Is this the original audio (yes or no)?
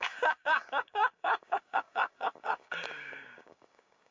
no